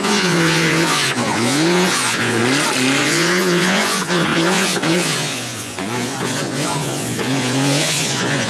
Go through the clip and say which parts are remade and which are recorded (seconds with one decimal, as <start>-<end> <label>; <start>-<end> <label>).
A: 0.0-2.4 remade; 2.4-3.0 recorded; 3.0-8.5 remade

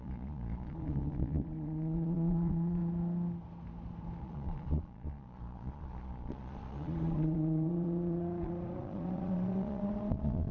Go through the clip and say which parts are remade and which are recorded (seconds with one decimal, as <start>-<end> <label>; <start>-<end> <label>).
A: 0.0-2.8 remade; 2.8-4.2 recorded; 4.2-10.5 remade

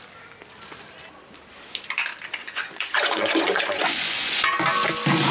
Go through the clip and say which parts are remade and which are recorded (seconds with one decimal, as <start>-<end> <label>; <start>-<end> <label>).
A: 0.0-2.4 recorded; 2.4-4.4 remade; 4.4-5.3 recorded

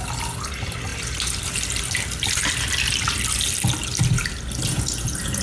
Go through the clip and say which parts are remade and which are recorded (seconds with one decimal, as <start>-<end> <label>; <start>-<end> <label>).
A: 0.0-4.7 recorded; 4.7-5.4 remade

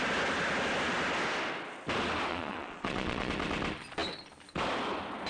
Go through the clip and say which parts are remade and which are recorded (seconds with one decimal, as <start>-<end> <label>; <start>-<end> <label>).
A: 0.0-2.3 recorded; 2.3-3.3 remade; 3.3-5.3 recorded